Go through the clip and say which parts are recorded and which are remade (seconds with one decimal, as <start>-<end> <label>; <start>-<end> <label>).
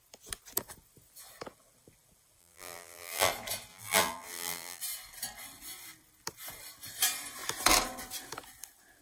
0.0-2.4 recorded; 2.4-3.3 remade; 3.3-3.7 recorded; 3.7-4.8 remade; 4.8-9.0 recorded